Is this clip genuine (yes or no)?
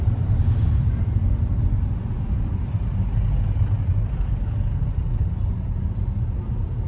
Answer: yes